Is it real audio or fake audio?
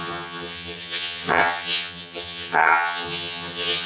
fake